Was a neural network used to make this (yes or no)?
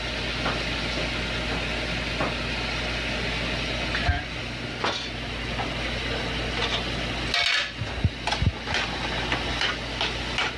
no